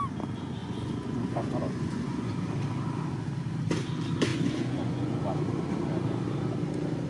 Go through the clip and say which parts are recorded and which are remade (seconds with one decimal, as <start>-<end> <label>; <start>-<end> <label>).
0.0-0.6 recorded; 0.6-2.3 remade; 2.3-4.3 recorded; 4.3-5.2 remade; 5.2-7.1 recorded